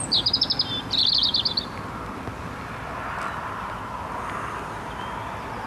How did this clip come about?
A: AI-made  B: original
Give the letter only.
B